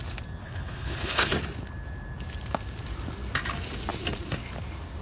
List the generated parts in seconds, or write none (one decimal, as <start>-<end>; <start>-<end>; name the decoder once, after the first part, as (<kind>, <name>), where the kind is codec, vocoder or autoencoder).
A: 0.4-1.3 (codec, HILCodec)